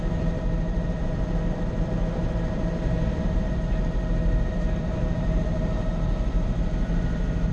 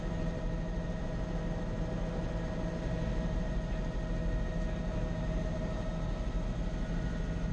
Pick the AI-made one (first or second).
first